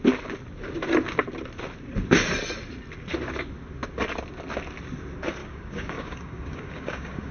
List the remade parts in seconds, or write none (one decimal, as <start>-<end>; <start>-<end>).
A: 5.4-7.3

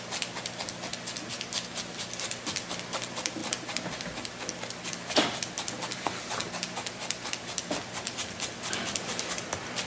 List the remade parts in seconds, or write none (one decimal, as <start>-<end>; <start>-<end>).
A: 3.4-4.6; 8.8-9.9

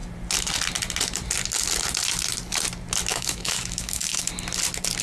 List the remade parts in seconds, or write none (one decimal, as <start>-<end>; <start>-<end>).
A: 3.1-4.3